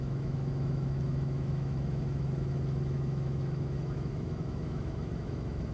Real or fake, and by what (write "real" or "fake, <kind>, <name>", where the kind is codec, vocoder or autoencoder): fake, autoencoder, DAC-VAE